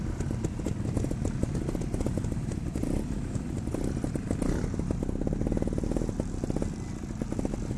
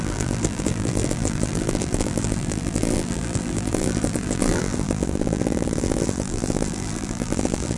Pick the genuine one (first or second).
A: first